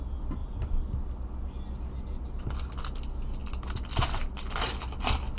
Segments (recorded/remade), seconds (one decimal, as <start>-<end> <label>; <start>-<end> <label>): 0.0-5.4 recorded